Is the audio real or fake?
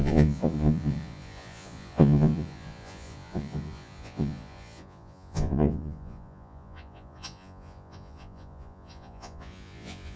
fake